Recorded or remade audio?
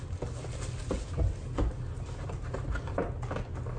recorded